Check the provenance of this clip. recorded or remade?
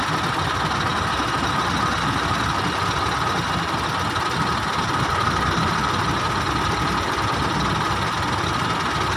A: recorded